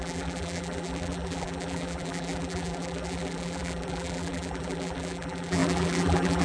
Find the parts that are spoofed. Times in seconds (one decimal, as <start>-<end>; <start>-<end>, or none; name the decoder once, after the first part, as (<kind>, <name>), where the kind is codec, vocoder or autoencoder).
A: 0.0-6.4 (vocoder, BigVGAN v2)